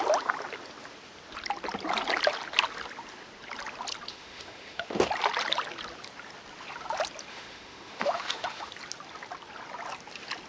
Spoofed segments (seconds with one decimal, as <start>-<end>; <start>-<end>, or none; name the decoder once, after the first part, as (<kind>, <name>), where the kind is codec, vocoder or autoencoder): 4.1-5.1 (autoencoder, DAC-VAE); 7.3-8.7